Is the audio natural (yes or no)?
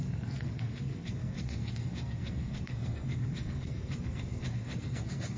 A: no